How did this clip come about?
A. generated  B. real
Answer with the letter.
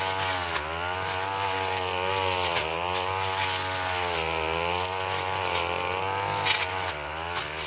B